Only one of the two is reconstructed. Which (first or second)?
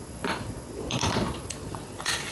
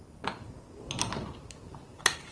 first